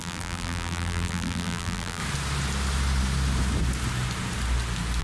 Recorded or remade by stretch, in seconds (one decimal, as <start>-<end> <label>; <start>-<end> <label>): 0.0-2.0 remade; 2.0-5.0 recorded